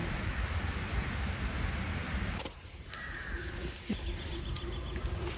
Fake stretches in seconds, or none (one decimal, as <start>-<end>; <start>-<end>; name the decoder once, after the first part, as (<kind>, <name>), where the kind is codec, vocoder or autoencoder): 0.0-1.5 (vocoder, BigVGAN v2); 2.0-3.2